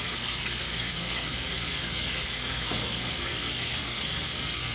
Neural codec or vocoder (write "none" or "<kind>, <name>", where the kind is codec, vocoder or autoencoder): codec, SNAC